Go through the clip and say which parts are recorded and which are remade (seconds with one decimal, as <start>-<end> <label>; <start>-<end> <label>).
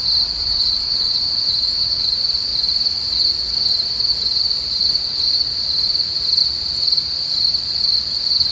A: 0.0-0.4 recorded; 0.4-2.1 remade; 2.1-8.5 recorded